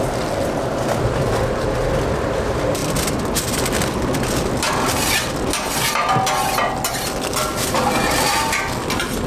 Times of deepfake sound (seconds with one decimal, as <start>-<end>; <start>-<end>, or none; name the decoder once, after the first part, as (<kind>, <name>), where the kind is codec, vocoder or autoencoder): none